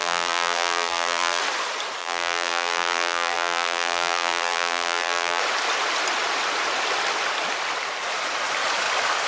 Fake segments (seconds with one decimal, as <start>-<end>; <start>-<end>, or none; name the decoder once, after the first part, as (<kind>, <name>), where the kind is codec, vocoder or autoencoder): 0.0-1.4 (vocoder, BigVGAN v2); 2.0-5.4